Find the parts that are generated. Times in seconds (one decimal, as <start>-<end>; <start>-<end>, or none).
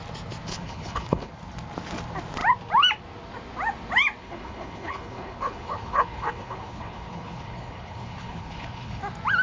0.5-1.3; 4.2-9.0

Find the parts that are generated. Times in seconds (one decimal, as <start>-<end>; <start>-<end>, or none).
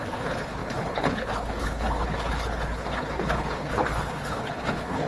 0.0-5.1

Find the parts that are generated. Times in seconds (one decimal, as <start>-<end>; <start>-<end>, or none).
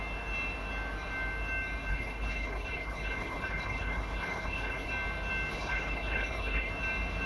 1.9-4.9; 5.5-6.7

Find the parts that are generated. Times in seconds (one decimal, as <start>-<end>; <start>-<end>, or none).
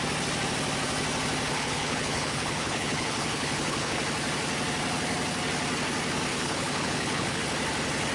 1.5-4.0; 6.3-7.4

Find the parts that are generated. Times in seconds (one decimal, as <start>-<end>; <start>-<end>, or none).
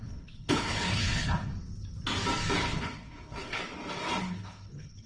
0.0-1.5; 2.6-3.6; 4.2-5.1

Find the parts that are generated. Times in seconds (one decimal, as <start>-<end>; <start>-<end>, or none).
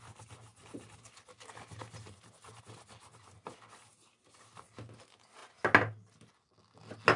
none